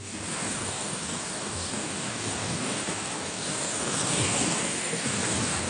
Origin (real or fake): fake